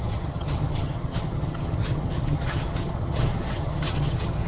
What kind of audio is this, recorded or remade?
remade